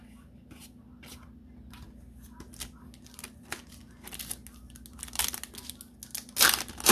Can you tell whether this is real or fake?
real